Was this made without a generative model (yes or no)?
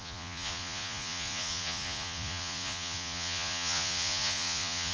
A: no